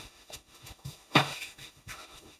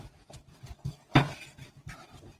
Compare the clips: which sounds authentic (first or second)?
second